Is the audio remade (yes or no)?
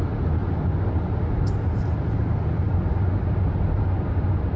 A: no